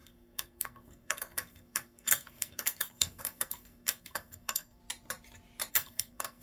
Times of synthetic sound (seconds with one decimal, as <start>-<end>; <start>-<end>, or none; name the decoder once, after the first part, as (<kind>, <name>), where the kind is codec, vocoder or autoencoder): 0.0-4.8 (codec, SNAC); 5.7-6.4